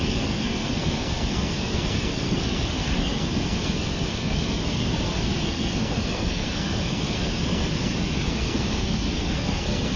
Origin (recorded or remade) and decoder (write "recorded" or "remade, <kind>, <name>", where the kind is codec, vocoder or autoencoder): remade, codec, SNAC